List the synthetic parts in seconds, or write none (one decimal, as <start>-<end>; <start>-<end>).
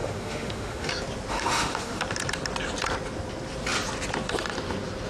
0.0-0.9; 1.3-2.0